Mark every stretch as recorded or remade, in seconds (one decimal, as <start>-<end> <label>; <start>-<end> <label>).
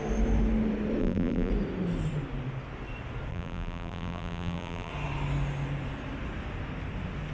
0.0-1.0 recorded; 1.0-1.5 remade; 1.5-3.3 recorded; 3.3-4.9 remade; 4.9-7.3 recorded